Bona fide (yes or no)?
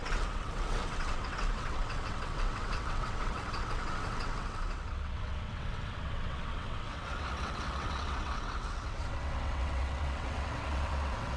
no